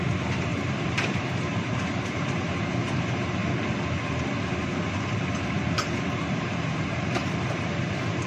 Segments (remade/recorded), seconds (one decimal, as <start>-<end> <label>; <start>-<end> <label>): 0.0-3.4 remade; 3.4-6.3 recorded; 6.3-8.3 remade